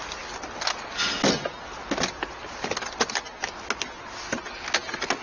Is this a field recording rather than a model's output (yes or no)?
yes